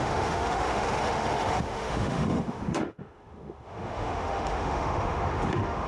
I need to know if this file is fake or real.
fake